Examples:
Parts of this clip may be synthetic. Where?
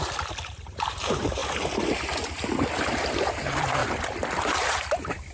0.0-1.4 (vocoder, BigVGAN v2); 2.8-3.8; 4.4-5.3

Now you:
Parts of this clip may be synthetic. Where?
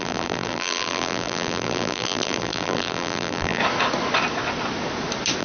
0.0-3.6 (vocoder, BigVGAN v2)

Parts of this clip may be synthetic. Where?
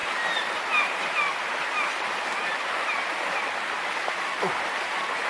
none